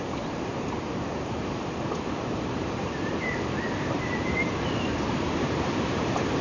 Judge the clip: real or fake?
fake